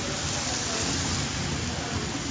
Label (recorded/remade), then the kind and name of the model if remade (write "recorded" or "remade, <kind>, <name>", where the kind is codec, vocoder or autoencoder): recorded